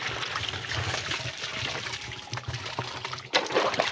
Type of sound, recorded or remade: recorded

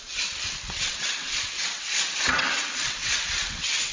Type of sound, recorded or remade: remade